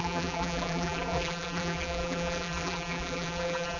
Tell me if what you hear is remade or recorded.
remade